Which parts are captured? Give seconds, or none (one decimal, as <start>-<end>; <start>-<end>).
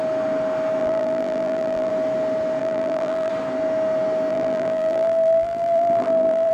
0.0-0.8; 1.9-2.6; 3.3-4.3